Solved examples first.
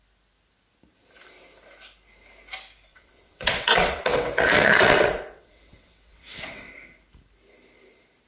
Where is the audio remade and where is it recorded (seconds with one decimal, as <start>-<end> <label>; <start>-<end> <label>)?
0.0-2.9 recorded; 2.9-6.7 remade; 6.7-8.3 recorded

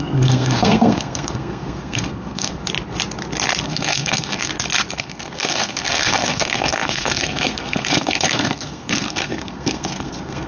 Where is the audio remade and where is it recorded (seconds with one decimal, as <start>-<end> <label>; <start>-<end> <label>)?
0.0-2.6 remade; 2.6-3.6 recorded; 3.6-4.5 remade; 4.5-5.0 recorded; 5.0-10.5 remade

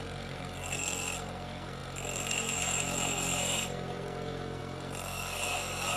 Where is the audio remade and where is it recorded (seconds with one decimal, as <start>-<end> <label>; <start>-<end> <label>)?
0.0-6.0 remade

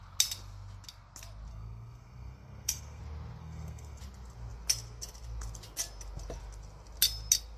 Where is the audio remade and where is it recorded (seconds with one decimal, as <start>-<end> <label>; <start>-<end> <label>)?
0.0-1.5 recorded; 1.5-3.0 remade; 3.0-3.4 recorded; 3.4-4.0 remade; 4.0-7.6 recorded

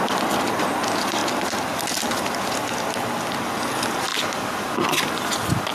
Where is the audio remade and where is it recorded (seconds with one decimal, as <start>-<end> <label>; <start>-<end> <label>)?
0.0-5.7 recorded

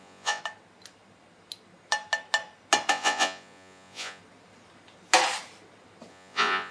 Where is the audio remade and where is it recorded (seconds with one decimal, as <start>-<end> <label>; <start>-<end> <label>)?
0.0-0.4 remade; 0.4-2.9 recorded; 2.9-4.2 remade; 4.2-6.1 recorded; 6.1-6.7 remade